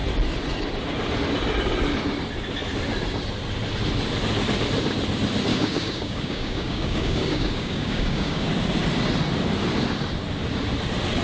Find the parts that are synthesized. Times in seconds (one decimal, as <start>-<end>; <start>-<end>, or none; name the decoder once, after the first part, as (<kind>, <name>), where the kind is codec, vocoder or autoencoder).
5.5-8.5 (codec, DAC)